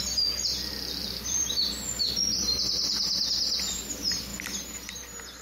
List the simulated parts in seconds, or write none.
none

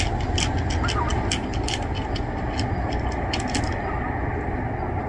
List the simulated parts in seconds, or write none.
none